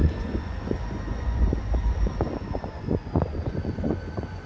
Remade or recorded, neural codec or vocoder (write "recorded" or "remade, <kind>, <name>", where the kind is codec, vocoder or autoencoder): remade, vocoder, Vocos